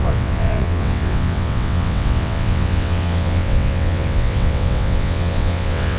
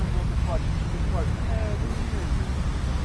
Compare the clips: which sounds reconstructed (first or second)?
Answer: first